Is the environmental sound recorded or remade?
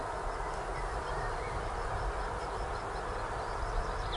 recorded